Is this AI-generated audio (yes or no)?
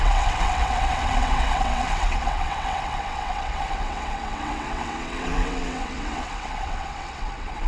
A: yes